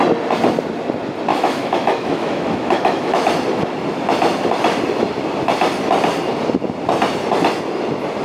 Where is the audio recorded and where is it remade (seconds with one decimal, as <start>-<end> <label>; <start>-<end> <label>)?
0.0-1.3 recorded; 1.3-3.3 remade; 3.3-8.2 recorded

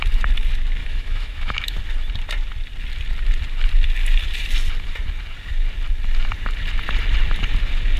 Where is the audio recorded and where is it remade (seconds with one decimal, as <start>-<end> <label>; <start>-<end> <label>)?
0.0-0.8 recorded; 0.8-1.8 remade; 1.8-8.0 recorded

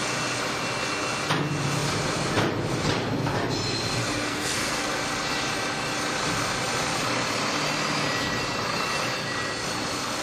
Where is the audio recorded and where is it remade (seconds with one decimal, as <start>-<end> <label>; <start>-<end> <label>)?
0.0-4.0 recorded; 4.0-5.0 remade; 5.0-10.2 recorded

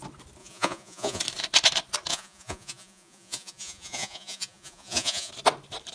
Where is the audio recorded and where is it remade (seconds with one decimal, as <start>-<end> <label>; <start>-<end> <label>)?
0.0-0.4 recorded; 0.4-1.2 remade; 1.2-2.1 recorded; 2.1-5.3 remade; 5.3-5.9 recorded

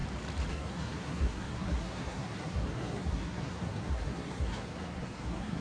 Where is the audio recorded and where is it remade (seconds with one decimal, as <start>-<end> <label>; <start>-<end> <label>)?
0.0-0.5 recorded; 0.5-5.6 remade

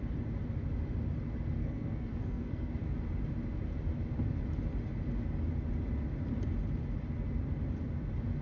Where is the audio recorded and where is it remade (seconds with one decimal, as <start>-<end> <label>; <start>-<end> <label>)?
0.0-1.6 recorded; 1.6-2.7 remade; 2.7-8.4 recorded

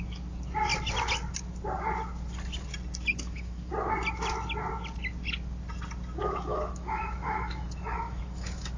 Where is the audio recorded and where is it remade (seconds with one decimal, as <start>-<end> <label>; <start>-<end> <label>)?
0.0-3.1 recorded; 3.1-3.7 remade; 3.7-6.2 recorded; 6.2-8.8 remade

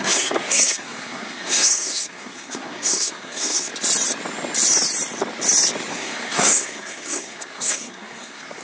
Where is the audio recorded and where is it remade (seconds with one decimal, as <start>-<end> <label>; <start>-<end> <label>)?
0.0-3.7 remade; 3.7-5.9 recorded; 5.9-8.6 remade